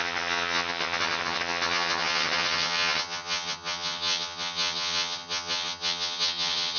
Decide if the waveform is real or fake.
fake